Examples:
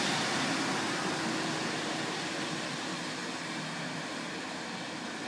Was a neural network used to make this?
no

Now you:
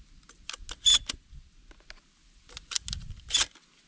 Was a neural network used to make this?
no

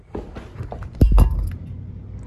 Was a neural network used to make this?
no